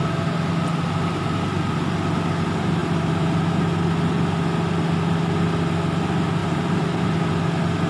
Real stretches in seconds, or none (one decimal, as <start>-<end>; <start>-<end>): 0.0-2.8; 3.5-6.4; 7.3-7.9